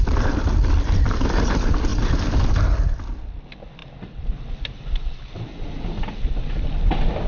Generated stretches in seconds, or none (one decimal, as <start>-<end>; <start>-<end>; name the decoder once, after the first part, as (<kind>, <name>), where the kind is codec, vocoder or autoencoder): none